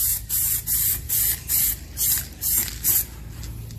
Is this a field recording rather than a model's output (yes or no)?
yes